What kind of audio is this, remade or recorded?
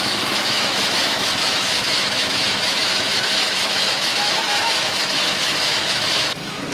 remade